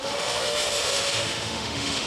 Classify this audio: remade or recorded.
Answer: remade